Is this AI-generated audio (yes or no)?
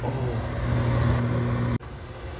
no